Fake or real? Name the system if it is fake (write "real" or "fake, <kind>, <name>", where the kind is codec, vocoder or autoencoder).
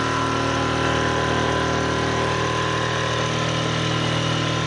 real